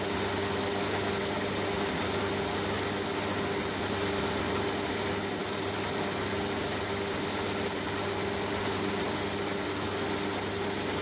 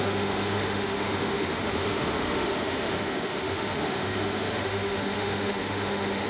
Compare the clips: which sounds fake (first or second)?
second